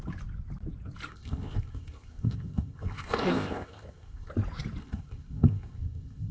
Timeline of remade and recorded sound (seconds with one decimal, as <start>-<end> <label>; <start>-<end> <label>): 0.0-1.1 recorded; 1.1-4.3 remade; 4.3-4.8 recorded; 4.8-6.3 remade